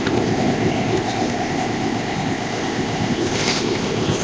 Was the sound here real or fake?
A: fake